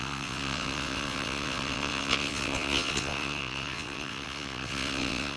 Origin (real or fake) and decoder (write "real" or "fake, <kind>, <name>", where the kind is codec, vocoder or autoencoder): fake, vocoder, WaveNeXt